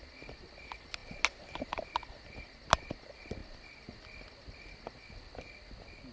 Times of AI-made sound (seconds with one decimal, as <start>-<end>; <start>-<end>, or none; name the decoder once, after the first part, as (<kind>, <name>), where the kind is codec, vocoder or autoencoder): none